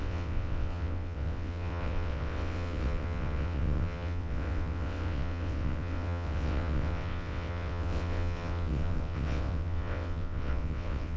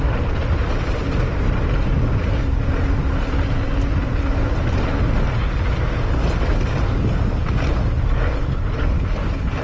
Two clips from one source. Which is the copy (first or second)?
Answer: first